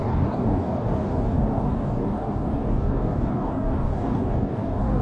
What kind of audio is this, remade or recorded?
remade